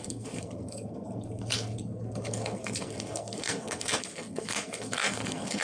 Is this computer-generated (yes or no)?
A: yes